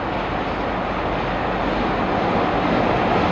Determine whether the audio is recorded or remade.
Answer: recorded